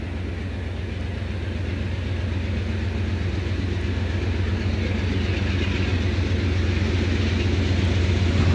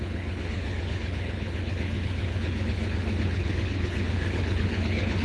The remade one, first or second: second